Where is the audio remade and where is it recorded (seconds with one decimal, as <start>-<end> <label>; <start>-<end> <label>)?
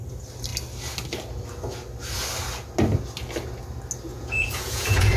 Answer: 0.0-4.1 recorded; 4.1-5.2 remade